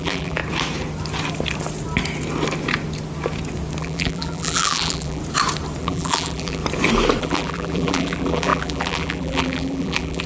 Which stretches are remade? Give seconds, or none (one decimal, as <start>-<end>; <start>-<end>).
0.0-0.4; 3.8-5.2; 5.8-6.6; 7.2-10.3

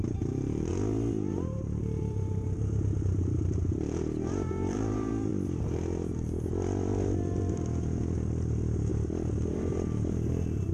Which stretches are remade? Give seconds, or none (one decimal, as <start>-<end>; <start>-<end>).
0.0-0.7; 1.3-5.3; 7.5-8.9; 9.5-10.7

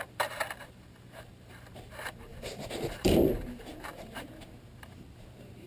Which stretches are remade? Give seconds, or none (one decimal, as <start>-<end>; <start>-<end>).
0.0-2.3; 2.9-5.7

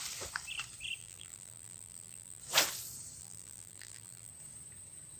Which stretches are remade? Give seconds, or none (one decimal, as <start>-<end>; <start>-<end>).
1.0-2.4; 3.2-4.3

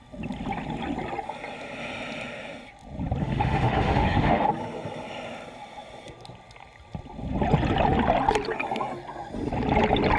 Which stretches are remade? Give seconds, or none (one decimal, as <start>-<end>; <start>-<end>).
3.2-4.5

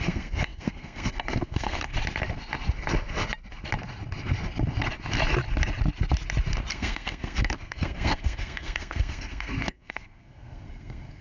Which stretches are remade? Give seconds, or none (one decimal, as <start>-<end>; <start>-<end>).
0.0-1.9; 6.7-11.2